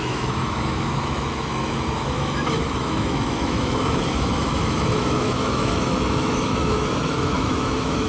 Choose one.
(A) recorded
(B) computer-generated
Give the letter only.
B